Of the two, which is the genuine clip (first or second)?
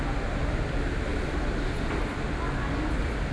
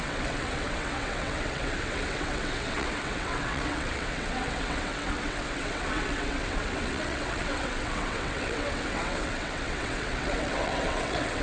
first